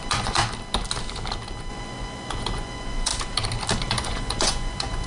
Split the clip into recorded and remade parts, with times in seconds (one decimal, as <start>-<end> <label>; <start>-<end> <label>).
0.0-0.4 remade; 0.4-1.7 recorded; 1.7-3.1 remade; 3.1-3.8 recorded; 3.8-5.1 remade